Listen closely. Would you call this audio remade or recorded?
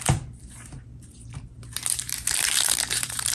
remade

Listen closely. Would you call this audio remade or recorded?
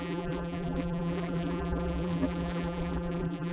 remade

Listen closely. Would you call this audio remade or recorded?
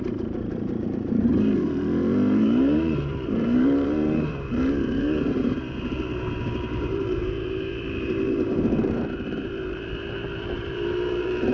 remade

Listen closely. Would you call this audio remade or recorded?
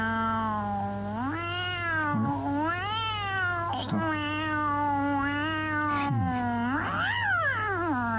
recorded